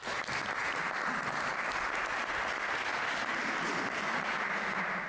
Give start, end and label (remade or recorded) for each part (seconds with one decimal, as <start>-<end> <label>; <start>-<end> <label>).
0.0-5.1 recorded